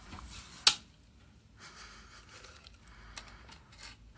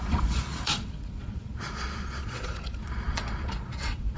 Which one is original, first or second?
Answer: first